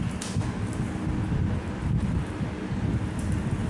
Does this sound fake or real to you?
real